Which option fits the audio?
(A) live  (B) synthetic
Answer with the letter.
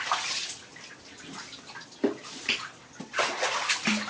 A